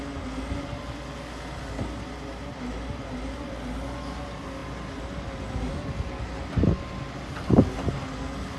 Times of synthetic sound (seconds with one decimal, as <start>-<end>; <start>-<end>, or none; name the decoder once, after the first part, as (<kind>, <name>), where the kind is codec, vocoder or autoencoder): none